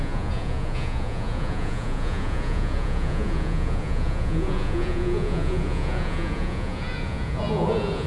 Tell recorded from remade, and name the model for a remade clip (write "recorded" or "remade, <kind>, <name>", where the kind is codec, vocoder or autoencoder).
remade, vocoder, Vocos